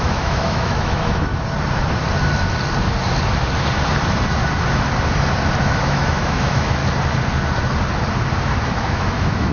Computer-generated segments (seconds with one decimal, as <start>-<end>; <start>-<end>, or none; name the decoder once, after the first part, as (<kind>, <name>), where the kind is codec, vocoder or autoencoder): 0.0-1.3 (autoencoder, DAC-VAE); 5.6-6.8; 8.7-9.5